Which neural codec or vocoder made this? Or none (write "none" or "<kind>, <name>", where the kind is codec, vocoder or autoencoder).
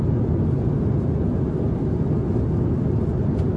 none